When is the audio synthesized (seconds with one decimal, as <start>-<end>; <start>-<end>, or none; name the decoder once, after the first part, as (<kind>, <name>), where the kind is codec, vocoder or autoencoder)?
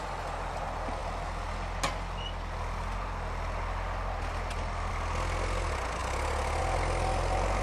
none